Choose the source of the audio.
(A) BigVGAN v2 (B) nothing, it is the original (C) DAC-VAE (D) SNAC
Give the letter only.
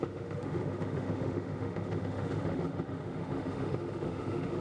C